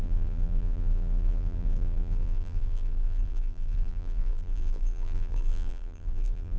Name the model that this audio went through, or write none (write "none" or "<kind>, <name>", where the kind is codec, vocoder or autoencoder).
vocoder, BigVGAN v2